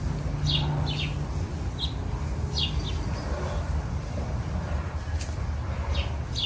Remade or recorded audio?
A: recorded